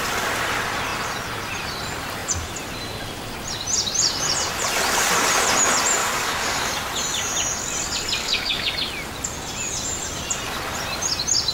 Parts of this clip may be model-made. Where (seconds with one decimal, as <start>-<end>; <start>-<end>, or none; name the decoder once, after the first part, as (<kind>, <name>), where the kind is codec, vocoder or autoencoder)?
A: 6.0-6.7 (codec, DAC); 8.2-8.7